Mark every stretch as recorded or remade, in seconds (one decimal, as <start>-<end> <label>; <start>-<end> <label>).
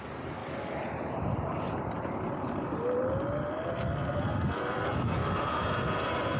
0.0-5.2 recorded; 5.2-5.7 remade; 5.7-6.4 recorded